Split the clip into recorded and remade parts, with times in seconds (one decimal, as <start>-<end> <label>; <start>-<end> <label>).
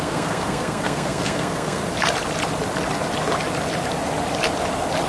0.0-1.8 remade; 1.8-5.1 recorded